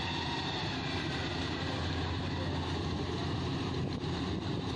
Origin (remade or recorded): remade